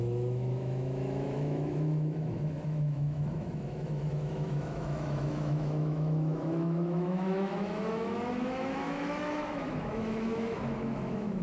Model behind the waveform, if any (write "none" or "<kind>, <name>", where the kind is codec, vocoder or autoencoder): autoencoder, DAC-VAE